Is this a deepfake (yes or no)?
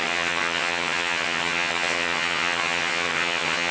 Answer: yes